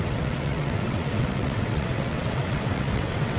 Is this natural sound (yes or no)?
no